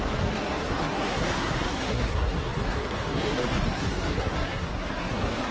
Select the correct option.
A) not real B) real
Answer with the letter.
A